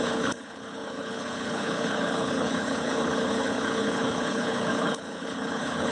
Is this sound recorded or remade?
remade